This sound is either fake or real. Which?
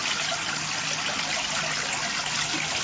real